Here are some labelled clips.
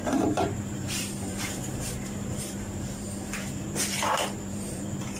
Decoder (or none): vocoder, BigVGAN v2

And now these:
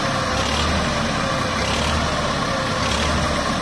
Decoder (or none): none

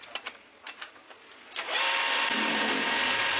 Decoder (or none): none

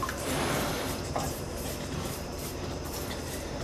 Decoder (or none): vocoder, BigVGAN v2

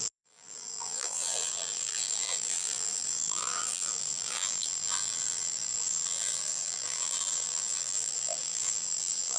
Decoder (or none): vocoder, BigVGAN v2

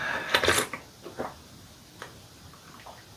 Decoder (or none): none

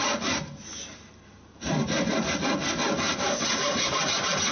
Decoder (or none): none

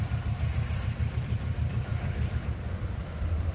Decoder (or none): vocoder, BigVGAN v2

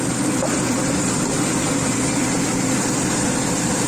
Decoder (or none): vocoder, BigVGAN v2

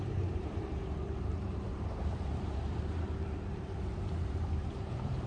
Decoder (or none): vocoder, BigVGAN v2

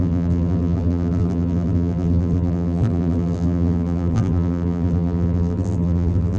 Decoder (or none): vocoder, BigVGAN v2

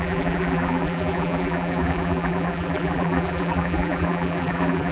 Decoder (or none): vocoder, BigVGAN v2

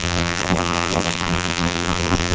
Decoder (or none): vocoder, BigVGAN v2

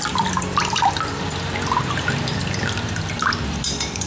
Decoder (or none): vocoder, BigVGAN v2